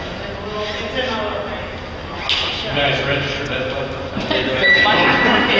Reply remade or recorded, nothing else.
recorded